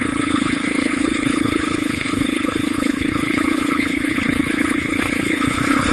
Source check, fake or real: fake